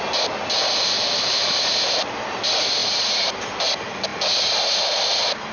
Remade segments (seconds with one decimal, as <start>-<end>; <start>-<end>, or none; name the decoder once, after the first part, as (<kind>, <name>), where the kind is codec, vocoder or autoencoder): none